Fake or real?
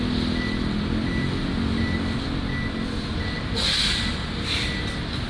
real